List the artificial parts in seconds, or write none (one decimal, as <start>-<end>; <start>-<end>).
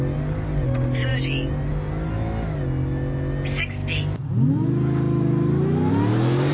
none